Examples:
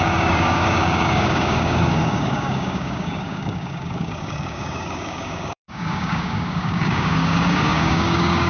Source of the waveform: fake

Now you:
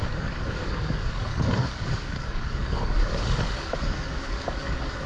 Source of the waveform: fake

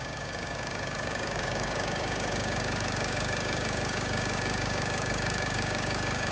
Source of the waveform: fake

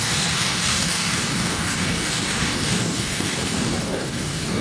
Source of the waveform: fake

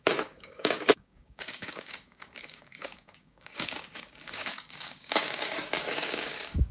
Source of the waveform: fake